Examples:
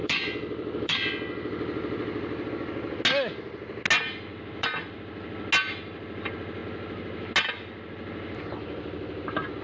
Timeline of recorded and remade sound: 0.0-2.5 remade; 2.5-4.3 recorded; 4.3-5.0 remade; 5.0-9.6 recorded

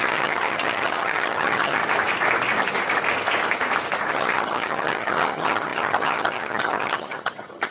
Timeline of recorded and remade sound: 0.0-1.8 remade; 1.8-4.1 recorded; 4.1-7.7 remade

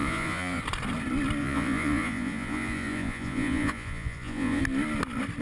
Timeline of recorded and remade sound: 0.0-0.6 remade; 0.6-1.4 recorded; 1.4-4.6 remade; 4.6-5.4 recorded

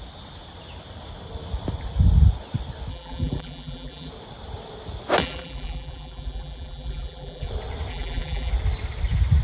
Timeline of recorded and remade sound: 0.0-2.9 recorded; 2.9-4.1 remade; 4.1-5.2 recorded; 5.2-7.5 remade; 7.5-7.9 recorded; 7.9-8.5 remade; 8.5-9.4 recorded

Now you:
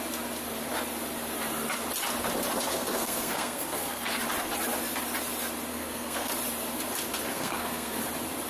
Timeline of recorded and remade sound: 0.0-2.7 recorded; 2.7-4.2 remade; 4.2-5.7 recorded; 5.7-6.3 remade; 6.3-7.3 recorded; 7.3-8.0 remade; 8.0-8.5 recorded

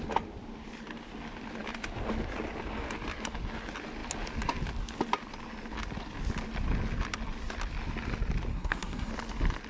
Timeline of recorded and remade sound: 0.0-8.5 recorded; 8.5-9.1 remade; 9.1-9.7 recorded